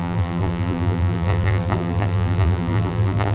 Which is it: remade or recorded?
remade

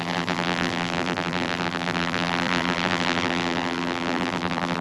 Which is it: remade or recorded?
remade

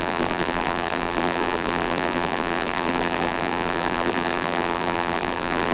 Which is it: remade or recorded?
remade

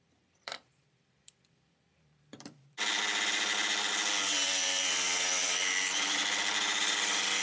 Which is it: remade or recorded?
remade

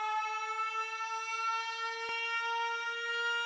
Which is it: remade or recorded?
recorded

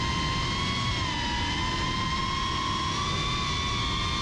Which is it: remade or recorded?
recorded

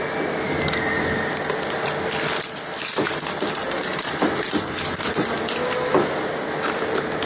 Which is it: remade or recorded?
recorded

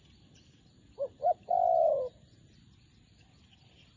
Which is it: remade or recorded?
recorded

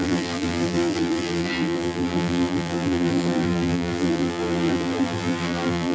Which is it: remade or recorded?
remade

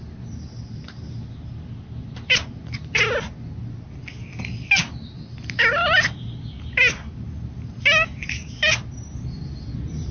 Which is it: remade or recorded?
recorded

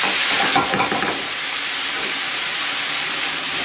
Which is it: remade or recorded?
recorded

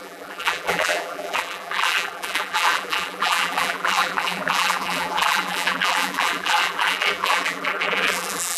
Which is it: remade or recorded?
remade